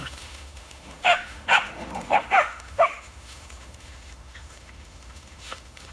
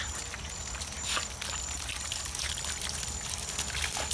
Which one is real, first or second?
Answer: second